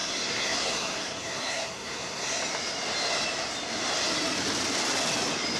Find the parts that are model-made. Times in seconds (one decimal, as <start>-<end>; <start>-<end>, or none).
0.0-2.4